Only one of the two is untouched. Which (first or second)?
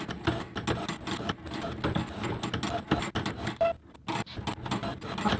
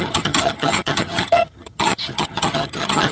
first